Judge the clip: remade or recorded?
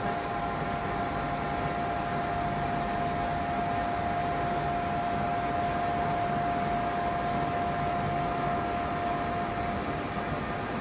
recorded